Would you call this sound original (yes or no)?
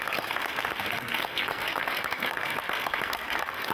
no